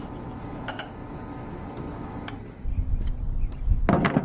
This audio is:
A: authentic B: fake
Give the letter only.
A